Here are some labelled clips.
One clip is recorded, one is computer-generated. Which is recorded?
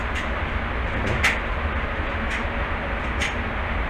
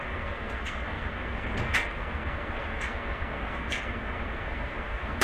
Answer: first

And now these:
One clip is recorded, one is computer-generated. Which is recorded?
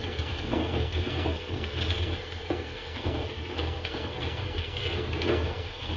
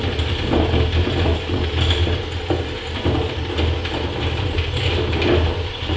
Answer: second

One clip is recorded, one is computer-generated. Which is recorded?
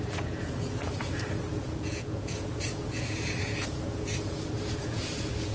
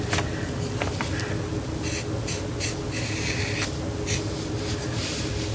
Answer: second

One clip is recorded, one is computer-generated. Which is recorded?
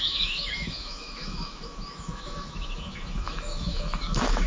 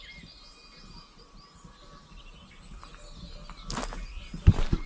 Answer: second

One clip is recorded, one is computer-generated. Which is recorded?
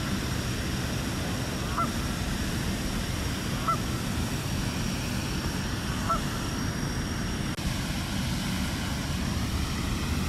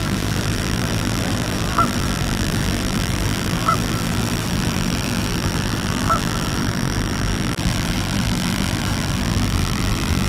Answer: first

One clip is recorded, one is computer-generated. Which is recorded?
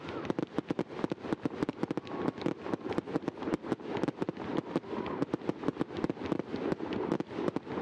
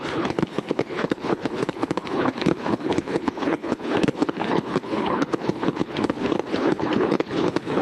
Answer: first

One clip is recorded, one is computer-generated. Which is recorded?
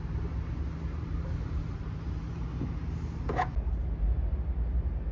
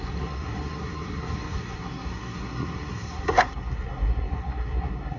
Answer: first